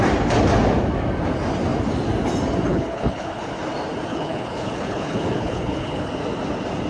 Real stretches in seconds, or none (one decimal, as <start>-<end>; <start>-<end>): 0.0-2.7; 3.5-4.1; 6.1-6.9